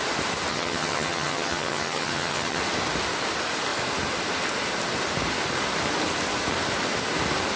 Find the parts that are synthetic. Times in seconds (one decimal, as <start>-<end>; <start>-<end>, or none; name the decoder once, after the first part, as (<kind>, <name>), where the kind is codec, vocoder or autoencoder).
0.5-2.6 (vocoder, HiFi-GAN)